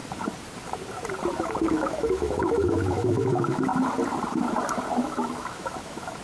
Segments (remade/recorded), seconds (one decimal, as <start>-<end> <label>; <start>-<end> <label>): 0.0-1.4 recorded; 1.4-3.7 remade; 3.7-5.0 recorded; 5.0-6.2 remade